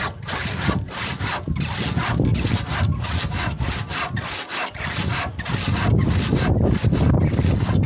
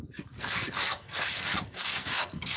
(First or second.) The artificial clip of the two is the second